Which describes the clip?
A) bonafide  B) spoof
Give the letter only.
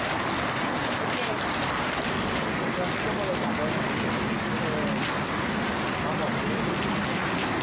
A